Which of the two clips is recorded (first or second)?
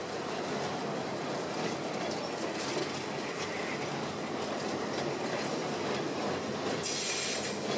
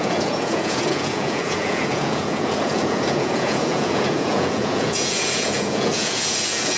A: first